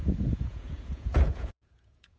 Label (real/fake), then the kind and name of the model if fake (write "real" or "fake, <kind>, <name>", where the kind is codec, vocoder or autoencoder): fake, vocoder, Vocos